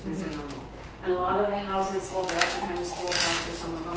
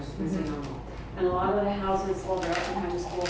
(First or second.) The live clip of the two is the second